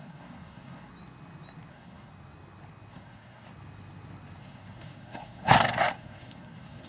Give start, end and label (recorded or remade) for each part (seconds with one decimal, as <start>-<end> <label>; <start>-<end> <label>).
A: 0.0-0.9 remade; 0.9-1.7 recorded; 1.7-2.1 remade; 2.1-2.9 recorded; 2.9-3.5 remade; 3.5-4.4 recorded; 4.4-6.9 remade